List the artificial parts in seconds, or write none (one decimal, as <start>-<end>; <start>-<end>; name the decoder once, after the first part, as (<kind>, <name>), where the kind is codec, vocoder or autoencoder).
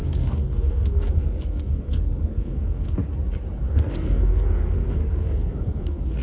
0.0-3.0 (codec, SNAC); 3.7-6.2